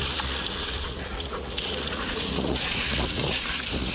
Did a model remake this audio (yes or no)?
yes